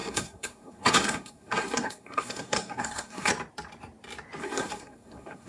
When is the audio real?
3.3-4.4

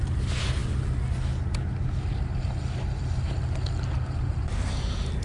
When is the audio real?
0.0-5.2